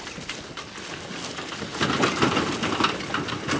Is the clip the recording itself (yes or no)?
yes